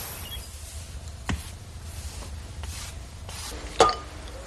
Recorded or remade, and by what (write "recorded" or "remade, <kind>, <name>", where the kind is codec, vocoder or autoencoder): recorded